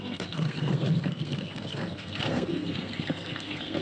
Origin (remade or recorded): remade